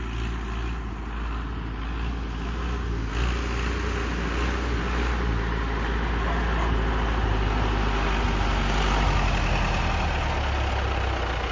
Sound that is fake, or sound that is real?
real